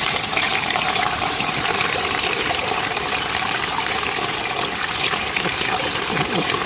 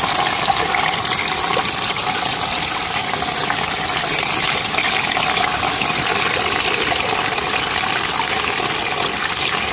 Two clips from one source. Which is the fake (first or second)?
first